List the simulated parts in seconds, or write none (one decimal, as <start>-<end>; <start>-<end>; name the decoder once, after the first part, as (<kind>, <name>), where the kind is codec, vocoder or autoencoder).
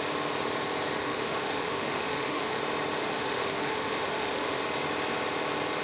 1.0-2.6 (autoencoder, DAC-VAE); 3.0-4.6